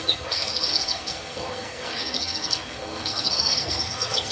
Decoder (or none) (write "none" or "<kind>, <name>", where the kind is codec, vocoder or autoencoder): codec, SNAC